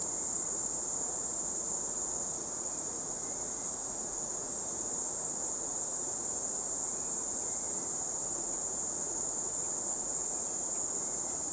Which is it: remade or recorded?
remade